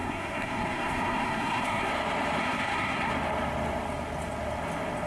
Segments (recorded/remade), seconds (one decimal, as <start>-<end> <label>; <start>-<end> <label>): 0.0-1.9 remade; 1.9-2.4 recorded; 2.4-3.1 remade; 3.1-5.1 recorded